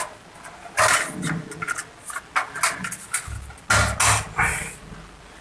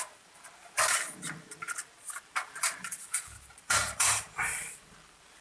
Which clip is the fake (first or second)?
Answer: second